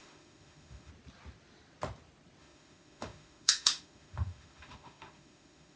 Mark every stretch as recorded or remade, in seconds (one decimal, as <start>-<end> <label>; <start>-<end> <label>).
0.0-0.9 remade; 0.9-2.4 recorded; 2.4-5.8 remade